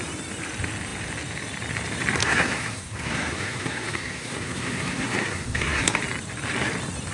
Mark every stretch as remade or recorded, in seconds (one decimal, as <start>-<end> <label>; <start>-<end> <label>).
0.0-2.2 recorded; 2.2-6.0 remade; 6.0-7.1 recorded